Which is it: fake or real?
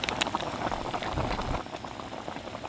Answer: fake